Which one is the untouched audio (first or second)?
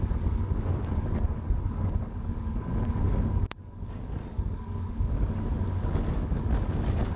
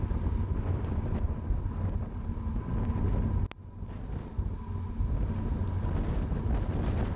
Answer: second